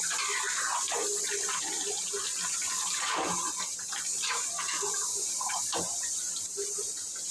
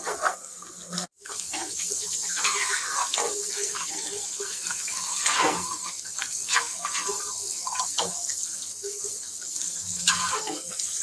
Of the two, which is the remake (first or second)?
second